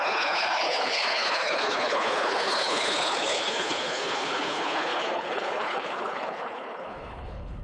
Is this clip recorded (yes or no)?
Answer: no